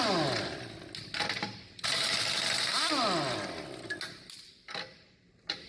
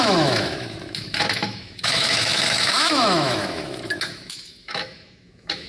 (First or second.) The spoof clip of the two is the second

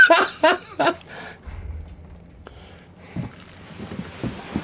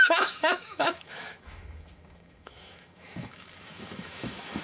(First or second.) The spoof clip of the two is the second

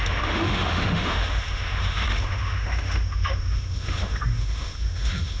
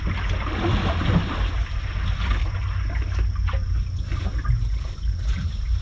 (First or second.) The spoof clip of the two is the first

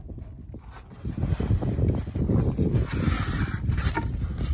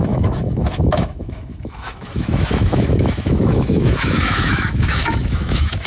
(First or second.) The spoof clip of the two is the second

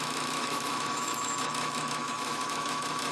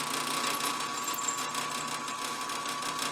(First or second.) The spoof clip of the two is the first